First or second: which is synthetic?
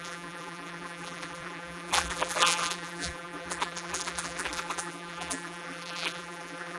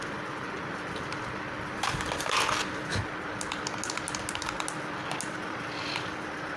first